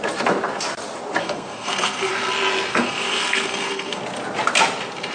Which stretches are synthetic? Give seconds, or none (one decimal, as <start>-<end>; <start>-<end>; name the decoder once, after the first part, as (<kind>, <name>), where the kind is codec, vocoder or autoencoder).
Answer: 1.2-2.1 (codec, SNAC); 2.7-4.0